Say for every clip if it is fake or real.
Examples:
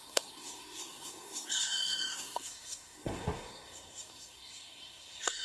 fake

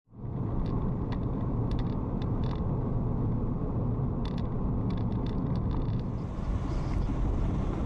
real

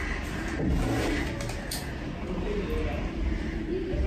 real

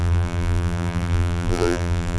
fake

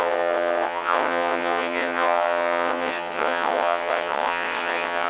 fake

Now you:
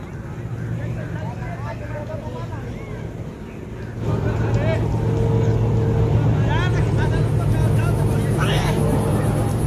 real